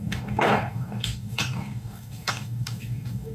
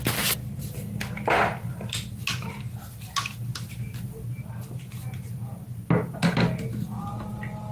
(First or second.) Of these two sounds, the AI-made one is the first